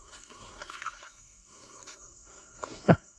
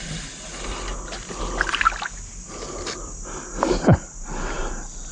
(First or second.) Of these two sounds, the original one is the second